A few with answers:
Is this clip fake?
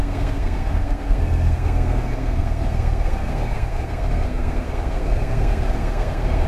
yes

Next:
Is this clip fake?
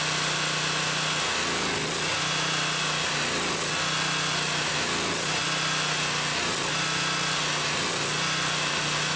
no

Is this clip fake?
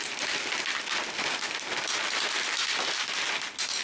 no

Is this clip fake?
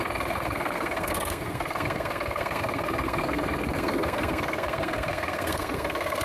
yes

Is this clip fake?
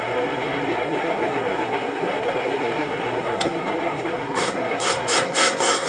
yes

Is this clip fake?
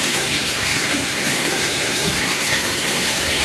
yes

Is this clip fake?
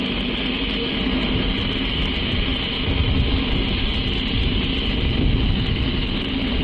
no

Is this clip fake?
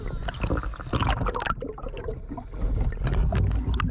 no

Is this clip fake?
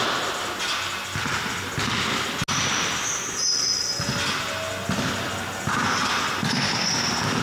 no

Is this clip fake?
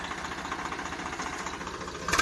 no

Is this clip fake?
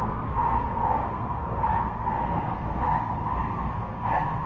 yes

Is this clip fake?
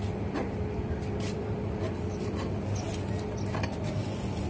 no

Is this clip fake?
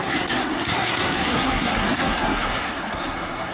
yes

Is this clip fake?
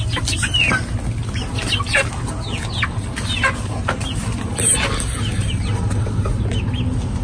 no